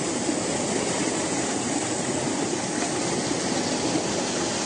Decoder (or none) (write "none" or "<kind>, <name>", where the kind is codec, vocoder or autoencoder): none